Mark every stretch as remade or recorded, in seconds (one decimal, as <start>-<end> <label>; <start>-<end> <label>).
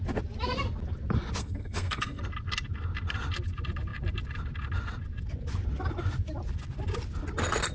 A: 0.0-1.4 recorded; 1.4-2.2 remade; 2.2-7.7 recorded